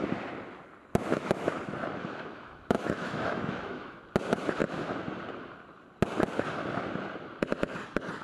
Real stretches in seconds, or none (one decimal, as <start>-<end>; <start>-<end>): 0.0-1.0; 1.5-2.0; 4.0-8.2